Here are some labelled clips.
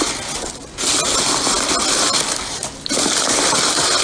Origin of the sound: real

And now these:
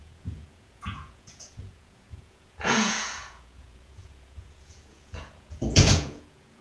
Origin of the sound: fake